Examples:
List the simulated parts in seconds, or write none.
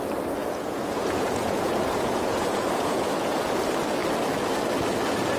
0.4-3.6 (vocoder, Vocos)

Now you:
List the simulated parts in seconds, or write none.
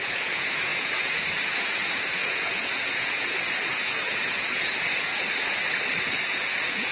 0.0-5.1 (vocoder, Vocos); 6.3-6.9